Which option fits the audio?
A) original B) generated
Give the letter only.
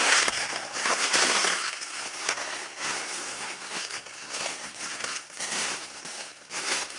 B